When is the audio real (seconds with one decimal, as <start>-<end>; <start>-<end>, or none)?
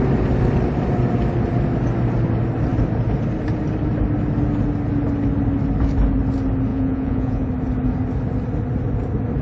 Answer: 0.0-6.7; 7.5-9.4